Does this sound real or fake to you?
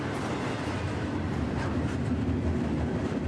real